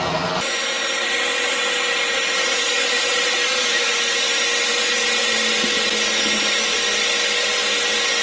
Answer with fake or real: real